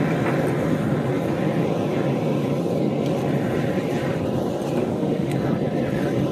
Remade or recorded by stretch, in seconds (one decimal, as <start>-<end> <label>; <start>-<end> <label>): 0.0-4.8 recorded; 4.8-5.3 remade; 5.3-6.3 recorded